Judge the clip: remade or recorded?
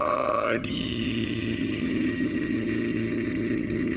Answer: remade